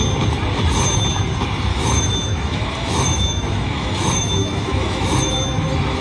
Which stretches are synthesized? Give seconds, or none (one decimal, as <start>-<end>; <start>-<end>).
1.7-5.3

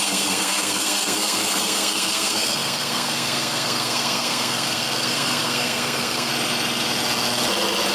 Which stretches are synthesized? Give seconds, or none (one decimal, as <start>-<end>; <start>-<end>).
0.0-6.3

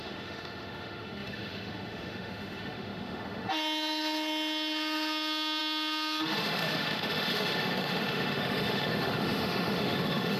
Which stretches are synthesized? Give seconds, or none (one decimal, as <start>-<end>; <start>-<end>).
0.0-10.4

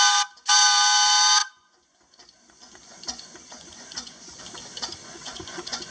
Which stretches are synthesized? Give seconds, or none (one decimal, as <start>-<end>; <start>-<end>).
1.4-4.4; 5.0-5.9

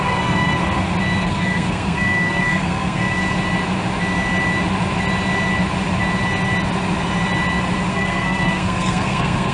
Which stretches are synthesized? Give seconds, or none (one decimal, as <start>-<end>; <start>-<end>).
0.0-0.6; 1.2-3.2; 7.9-9.5

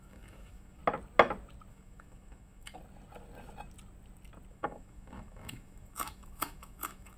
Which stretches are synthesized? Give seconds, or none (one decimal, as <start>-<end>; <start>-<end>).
0.0-0.8; 1.7-2.8; 4.5-7.2

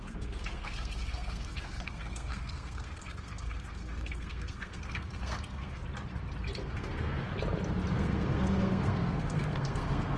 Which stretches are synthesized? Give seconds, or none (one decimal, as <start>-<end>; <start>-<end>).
0.0-5.8; 6.6-7.3; 7.9-10.2